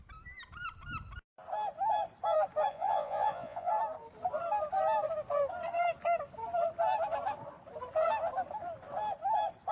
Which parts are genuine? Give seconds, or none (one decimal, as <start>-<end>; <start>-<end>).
0.0-2.7; 3.7-9.7